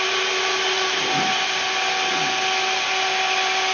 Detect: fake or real real